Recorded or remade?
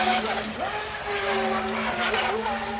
recorded